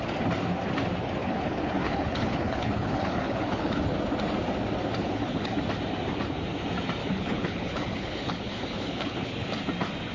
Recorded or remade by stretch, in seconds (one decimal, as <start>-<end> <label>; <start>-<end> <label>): 0.0-1.2 recorded; 1.2-3.8 remade; 3.8-5.0 recorded; 5.0-5.5 remade; 5.5-7.0 recorded; 7.0-9.5 remade; 9.5-10.1 recorded